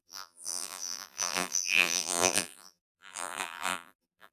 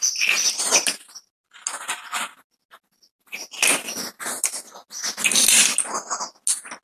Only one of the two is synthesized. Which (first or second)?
first